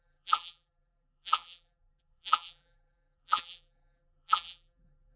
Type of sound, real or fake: fake